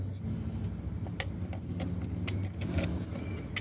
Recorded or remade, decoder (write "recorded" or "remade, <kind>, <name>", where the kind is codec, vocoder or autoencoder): recorded